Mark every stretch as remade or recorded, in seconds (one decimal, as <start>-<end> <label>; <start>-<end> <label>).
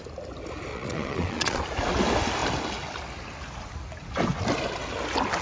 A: 0.0-0.7 recorded; 0.7-1.6 remade; 1.6-5.4 recorded